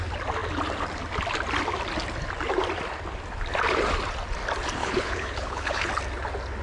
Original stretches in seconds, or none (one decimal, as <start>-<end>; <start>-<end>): 0.0-4.8; 5.9-6.6